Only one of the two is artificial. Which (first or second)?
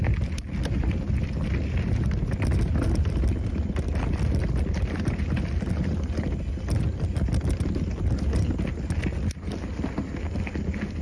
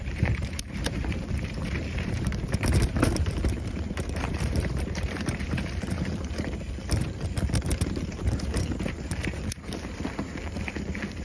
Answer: second